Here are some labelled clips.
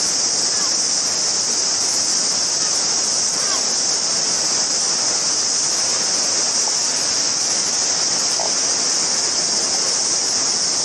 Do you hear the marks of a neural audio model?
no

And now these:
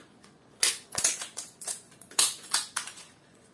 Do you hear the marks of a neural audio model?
yes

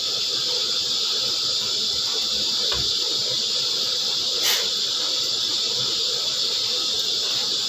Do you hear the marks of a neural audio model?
no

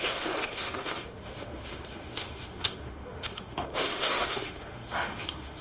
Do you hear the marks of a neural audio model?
yes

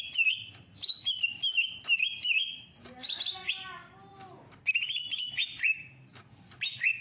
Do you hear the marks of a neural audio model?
no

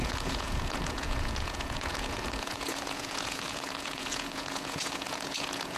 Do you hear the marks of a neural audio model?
yes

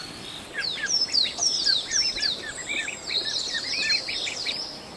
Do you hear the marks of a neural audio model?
no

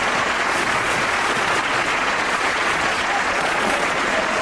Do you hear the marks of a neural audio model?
yes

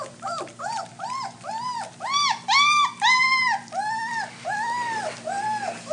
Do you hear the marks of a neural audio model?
no